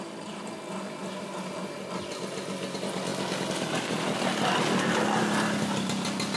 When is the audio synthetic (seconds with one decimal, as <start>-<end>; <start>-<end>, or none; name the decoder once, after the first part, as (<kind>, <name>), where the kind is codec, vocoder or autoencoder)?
none